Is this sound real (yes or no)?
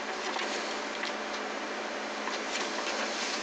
yes